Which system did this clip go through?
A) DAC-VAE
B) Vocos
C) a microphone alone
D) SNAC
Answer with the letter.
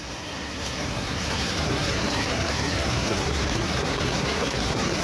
D